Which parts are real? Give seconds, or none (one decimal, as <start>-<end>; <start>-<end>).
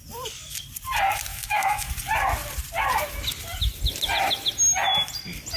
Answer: 0.0-1.3; 1.9-5.6